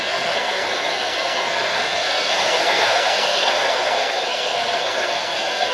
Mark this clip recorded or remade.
remade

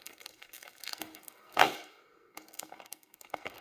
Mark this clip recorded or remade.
remade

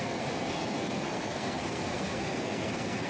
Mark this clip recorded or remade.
remade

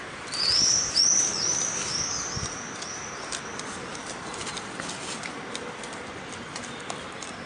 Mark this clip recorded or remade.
recorded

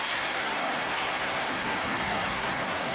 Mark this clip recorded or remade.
remade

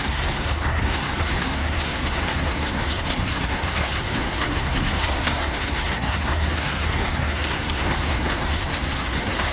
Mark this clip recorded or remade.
remade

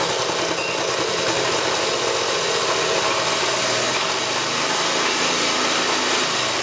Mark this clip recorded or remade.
recorded